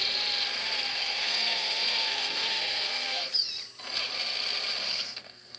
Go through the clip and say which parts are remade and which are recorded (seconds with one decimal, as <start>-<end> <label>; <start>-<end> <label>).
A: 0.0-0.9 recorded; 0.9-3.3 remade; 3.3-4.9 recorded; 4.9-5.6 remade